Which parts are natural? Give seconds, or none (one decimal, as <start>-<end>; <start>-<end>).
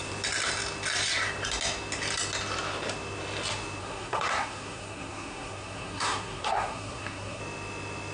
0.0-3.8; 7.4-8.1